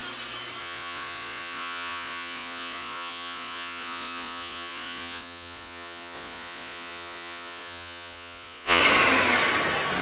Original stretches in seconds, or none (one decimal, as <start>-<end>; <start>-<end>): 0.0-0.6; 8.8-10.0